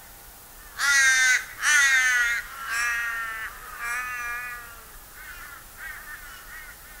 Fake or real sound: real